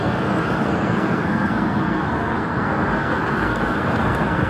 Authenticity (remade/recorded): remade